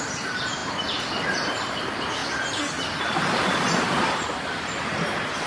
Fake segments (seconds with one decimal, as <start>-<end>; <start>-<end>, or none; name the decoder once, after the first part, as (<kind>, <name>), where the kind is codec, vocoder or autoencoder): 0.0-2.2 (vocoder, BigVGAN v2); 3.0-5.5